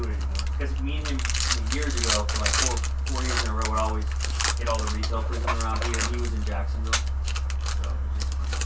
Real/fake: real